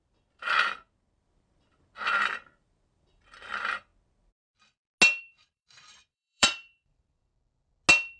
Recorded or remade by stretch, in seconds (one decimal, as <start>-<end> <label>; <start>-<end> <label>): 0.0-3.9 remade; 3.9-5.2 recorded; 5.2-7.3 remade; 7.3-8.2 recorded